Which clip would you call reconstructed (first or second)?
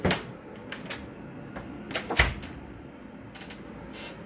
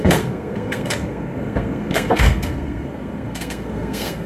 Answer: second